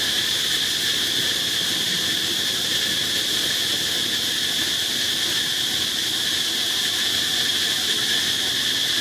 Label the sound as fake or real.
real